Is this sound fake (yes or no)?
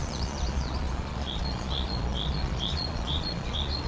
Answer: yes